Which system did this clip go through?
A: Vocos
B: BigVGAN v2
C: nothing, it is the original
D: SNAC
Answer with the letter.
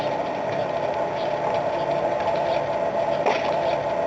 C